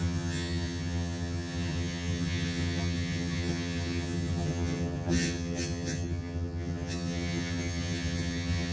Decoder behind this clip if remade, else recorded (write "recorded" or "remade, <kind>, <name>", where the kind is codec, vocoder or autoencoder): remade, vocoder, HiFi-GAN